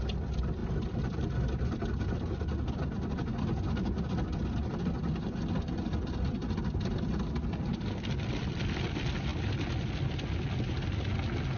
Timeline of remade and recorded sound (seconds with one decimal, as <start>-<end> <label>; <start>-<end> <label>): 0.0-6.4 recorded; 6.4-8.8 remade; 8.8-11.6 recorded